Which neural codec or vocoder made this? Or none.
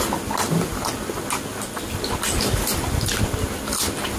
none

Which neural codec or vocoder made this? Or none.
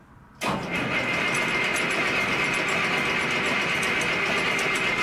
none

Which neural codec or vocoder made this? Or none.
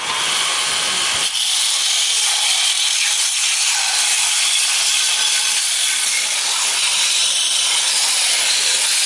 none